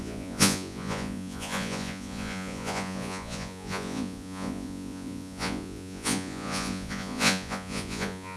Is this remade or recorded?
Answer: remade